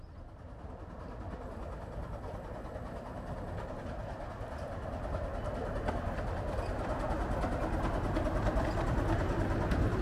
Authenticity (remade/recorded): recorded